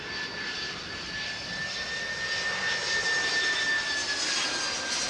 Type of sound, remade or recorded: recorded